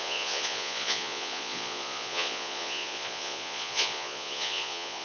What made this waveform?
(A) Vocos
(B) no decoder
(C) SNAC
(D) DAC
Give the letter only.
A